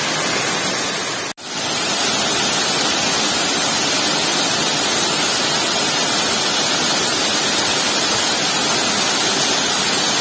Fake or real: real